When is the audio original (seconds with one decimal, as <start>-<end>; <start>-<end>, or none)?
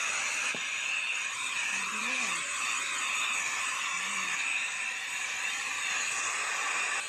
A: 0.0-7.1